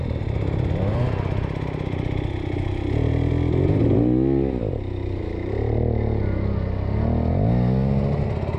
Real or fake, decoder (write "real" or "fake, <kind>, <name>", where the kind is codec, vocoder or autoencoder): real